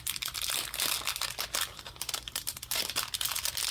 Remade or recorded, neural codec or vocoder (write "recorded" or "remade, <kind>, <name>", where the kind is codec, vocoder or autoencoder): recorded